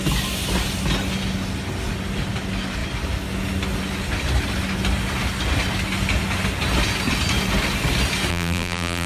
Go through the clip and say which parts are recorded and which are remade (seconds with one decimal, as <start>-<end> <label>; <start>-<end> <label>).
0.0-8.3 recorded; 8.3-9.1 remade